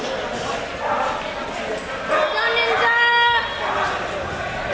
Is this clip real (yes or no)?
yes